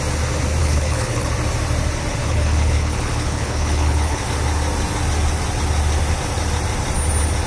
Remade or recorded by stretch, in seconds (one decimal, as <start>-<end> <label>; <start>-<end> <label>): 0.0-0.6 recorded; 0.6-1.3 remade; 1.3-2.2 recorded; 2.2-4.2 remade; 4.2-7.5 recorded